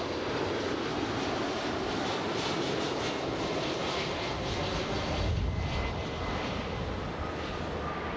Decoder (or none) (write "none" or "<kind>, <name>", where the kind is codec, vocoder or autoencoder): none